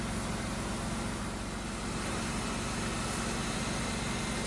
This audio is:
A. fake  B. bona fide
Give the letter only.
B